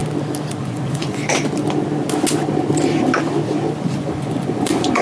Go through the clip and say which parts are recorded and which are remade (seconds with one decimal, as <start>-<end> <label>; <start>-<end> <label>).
0.0-0.6 recorded; 0.6-1.2 remade; 1.2-3.8 recorded; 3.8-5.0 remade